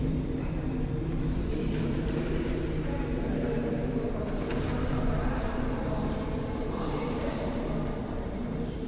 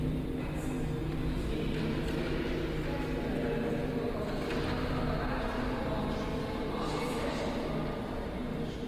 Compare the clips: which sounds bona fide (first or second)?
second